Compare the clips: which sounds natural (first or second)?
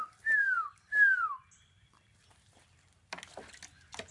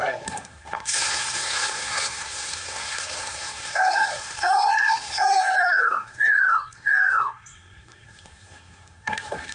first